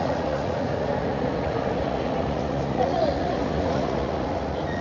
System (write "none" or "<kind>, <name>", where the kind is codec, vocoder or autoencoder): vocoder, Vocos